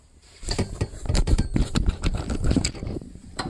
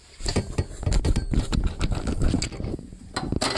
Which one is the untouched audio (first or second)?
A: second